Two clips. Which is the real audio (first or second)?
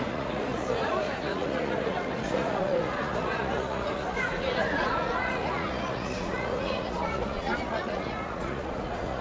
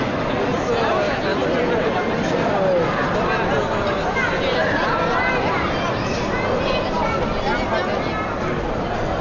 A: second